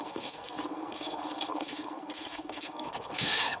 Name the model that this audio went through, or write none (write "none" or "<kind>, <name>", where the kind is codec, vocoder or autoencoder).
codec, SNAC